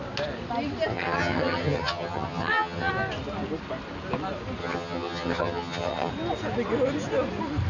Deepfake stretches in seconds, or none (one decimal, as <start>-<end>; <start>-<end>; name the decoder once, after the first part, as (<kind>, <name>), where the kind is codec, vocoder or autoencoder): 0.9-2.9 (vocoder, HiFi-GAN); 4.6-6.1